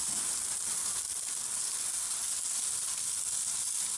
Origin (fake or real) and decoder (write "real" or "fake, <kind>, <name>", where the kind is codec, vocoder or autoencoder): real